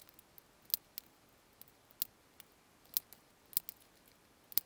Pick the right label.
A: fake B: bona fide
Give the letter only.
B